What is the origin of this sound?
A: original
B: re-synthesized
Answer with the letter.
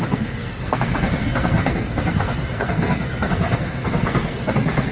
B